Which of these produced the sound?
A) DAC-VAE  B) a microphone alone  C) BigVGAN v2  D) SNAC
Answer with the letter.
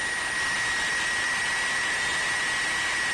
B